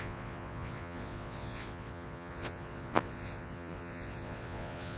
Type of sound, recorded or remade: remade